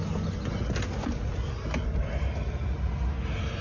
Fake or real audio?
real